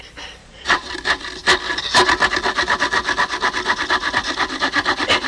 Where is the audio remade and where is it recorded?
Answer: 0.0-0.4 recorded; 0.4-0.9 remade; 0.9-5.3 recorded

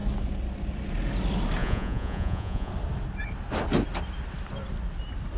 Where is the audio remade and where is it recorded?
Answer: 0.0-1.6 recorded; 1.6-2.7 remade; 2.7-5.4 recorded